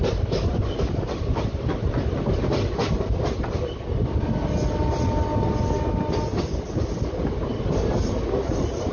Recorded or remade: recorded